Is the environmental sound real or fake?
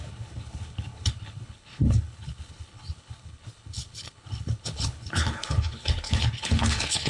fake